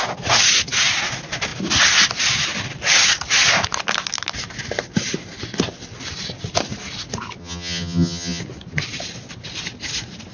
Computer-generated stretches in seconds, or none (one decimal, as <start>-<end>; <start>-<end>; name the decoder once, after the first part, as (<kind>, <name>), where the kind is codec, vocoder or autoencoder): 7.4-8.4 (vocoder, HiFi-GAN)